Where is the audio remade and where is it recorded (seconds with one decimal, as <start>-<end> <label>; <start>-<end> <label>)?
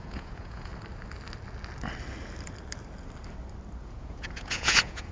0.0-0.7 remade; 0.7-3.8 recorded; 3.8-5.1 remade